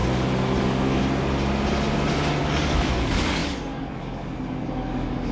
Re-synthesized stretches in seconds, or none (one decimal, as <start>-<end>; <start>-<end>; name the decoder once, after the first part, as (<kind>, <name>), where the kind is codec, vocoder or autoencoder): 0.6-1.0 (codec, DAC); 2.4-5.3